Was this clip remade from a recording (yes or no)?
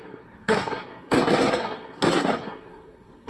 yes